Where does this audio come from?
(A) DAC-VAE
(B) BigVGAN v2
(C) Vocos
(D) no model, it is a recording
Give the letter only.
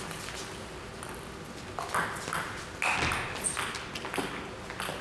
D